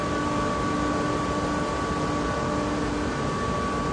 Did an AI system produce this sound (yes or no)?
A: no